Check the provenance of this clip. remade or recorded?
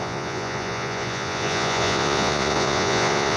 remade